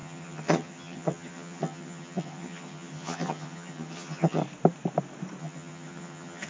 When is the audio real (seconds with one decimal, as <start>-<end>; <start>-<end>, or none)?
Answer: 4.4-5.4